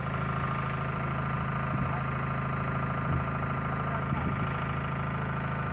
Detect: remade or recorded recorded